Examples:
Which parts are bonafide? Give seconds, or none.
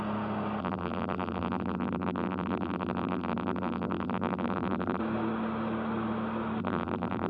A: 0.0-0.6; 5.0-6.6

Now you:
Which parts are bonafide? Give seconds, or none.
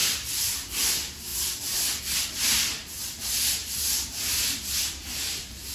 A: 0.9-1.3; 2.0-5.7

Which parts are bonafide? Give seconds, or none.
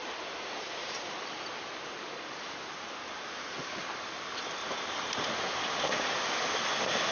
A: 3.6-4.6; 5.3-7.1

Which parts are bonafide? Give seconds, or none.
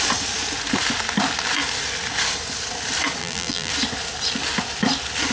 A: 0.0-3.2; 3.7-5.3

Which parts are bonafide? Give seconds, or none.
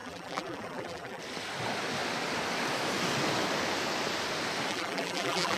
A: 1.2-4.7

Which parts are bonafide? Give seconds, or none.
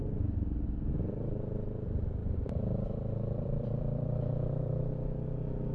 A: 0.0-2.2; 4.9-5.7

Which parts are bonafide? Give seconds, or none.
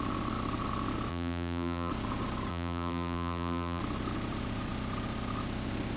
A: 0.0-1.1; 1.9-2.5; 3.8-6.0